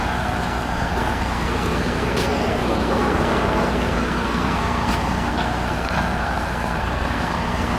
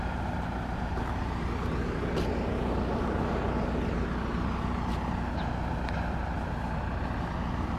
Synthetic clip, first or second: first